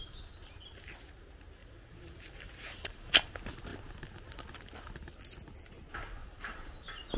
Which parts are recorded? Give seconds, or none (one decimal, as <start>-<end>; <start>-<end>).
0.0-1.6; 3.3-6.2; 6.7-7.2